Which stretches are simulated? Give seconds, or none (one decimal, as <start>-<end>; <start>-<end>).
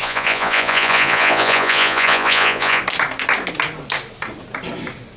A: 0.0-2.8